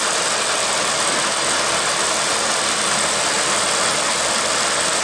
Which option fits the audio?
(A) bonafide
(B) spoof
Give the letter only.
A